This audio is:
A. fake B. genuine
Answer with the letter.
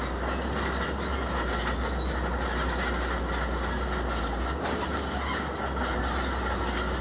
B